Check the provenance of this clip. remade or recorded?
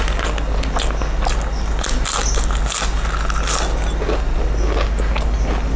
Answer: recorded